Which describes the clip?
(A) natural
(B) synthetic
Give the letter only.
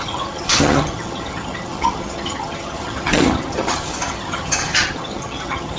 B